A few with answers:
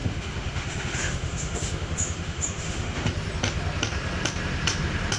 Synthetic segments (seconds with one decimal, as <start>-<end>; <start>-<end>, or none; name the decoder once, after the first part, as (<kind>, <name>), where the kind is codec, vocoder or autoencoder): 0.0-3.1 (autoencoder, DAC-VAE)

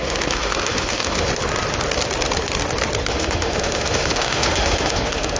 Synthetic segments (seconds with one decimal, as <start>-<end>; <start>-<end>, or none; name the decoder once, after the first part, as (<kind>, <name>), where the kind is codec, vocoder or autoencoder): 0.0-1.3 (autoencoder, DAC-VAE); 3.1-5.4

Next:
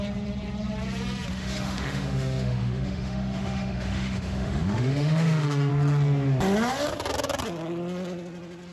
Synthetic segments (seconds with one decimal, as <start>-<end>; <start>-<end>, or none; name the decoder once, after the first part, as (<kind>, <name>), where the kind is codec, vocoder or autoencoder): 1.3-5.7 (autoencoder, DAC-VAE)

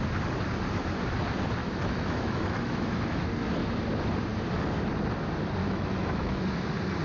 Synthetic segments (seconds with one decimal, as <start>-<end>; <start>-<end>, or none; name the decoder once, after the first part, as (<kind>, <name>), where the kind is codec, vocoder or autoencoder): 1.6-3.2 (autoencoder, DAC-VAE); 5.6-6.3

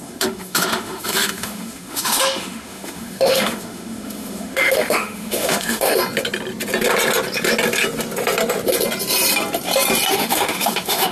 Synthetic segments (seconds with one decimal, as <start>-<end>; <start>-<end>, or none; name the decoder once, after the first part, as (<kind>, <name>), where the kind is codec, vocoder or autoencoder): 0.0-6.0 (autoencoder, DAC-VAE); 10.1-11.1